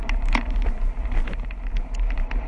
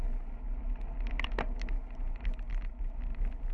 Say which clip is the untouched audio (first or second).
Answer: second